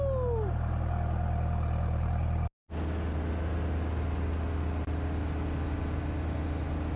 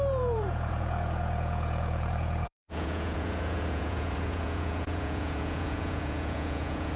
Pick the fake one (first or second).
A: second